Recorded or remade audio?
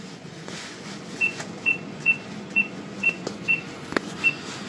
remade